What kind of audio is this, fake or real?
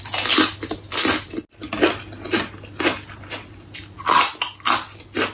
real